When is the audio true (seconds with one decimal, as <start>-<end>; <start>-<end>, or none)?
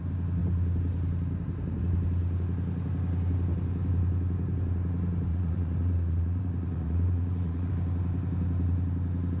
0.0-5.3; 7.7-9.4